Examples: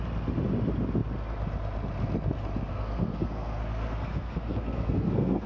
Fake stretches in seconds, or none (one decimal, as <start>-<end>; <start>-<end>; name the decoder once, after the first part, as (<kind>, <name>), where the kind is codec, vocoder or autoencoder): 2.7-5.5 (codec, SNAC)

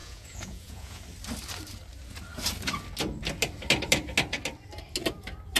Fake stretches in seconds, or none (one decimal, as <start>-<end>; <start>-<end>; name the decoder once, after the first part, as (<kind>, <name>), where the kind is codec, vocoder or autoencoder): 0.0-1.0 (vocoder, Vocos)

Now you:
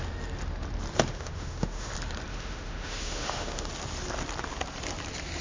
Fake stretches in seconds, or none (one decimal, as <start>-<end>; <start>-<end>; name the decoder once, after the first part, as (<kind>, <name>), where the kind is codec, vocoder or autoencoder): 1.1-1.9 (autoencoder, DAC-VAE); 2.3-3.7

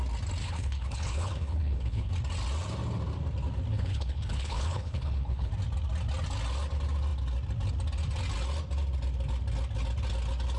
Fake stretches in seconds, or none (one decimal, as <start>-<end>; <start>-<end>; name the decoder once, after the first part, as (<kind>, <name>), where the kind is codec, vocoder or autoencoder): 0.4-2.1 (codec, HILCodec); 3.7-5.5

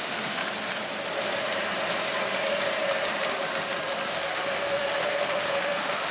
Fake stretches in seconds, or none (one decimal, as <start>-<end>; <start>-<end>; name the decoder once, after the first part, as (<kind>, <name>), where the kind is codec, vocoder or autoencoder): 0.0-0.4 (autoencoder, DAC-VAE); 4.1-6.1

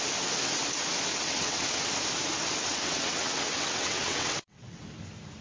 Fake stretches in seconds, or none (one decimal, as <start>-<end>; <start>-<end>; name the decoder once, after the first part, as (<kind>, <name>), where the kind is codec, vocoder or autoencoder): 1.1-1.9 (vocoder, WaveNeXt); 2.7-4.8

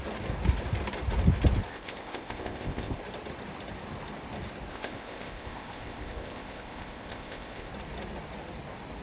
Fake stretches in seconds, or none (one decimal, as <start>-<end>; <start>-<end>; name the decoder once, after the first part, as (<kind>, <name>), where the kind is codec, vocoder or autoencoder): 1.7-3.0 (codec, ZipCodec); 4.7-7.7